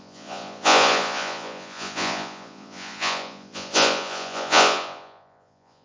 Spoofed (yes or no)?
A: yes